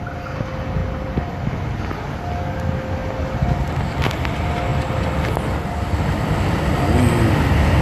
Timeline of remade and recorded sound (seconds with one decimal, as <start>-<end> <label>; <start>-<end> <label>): 0.0-0.8 recorded; 0.8-1.5 remade; 1.5-3.0 recorded; 3.0-3.7 remade; 3.7-4.7 recorded; 4.7-5.3 remade; 5.3-7.8 recorded